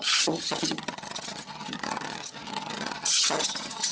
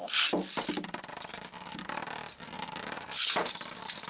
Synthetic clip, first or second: first